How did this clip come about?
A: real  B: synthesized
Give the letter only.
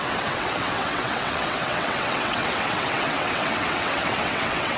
B